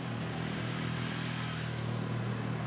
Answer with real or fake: real